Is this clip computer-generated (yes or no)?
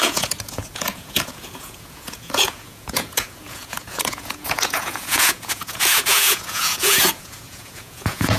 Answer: yes